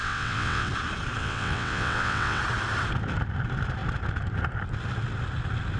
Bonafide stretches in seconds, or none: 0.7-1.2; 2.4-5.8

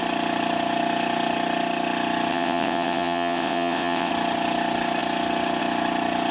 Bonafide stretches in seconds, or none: 0.0-2.3; 4.1-6.3

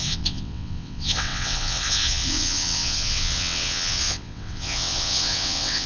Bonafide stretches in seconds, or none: none

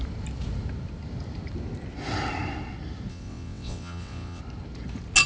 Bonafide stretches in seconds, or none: 0.0-3.1; 4.4-5.3